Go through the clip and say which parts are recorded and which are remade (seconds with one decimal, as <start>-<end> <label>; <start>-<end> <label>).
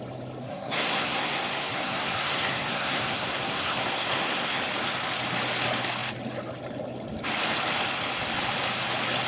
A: 0.0-0.4 recorded; 0.4-4.6 remade; 4.6-9.3 recorded